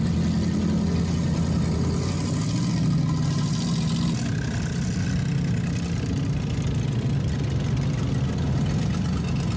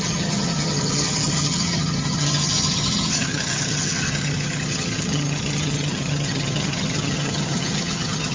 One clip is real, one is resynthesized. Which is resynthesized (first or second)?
second